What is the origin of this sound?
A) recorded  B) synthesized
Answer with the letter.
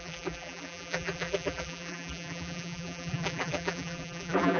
B